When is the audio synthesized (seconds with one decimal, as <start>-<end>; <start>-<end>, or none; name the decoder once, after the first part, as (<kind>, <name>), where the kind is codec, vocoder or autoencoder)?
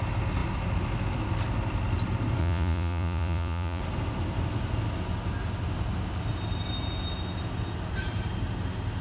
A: 2.4-3.8 (vocoder, Vocos)